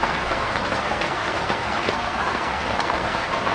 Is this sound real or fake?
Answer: fake